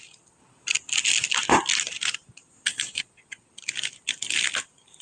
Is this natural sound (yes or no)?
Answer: yes